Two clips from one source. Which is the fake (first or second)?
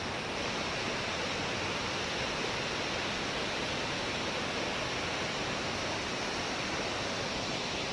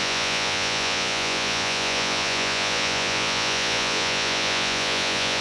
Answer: second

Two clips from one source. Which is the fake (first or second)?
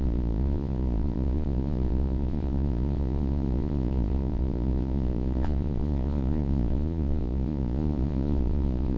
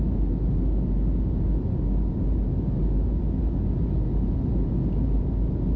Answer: first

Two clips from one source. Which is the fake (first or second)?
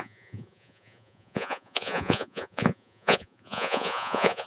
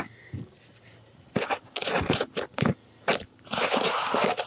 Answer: first